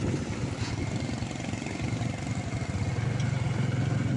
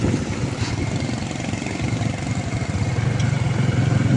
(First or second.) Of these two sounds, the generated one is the second